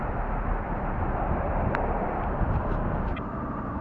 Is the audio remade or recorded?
remade